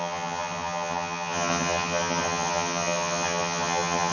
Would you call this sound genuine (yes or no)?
no